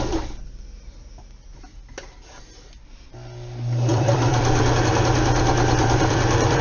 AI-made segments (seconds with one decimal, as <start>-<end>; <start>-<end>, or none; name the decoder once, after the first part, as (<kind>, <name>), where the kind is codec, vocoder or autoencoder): 3.9-4.8 (vocoder, BigVGAN v2); 5.8-6.6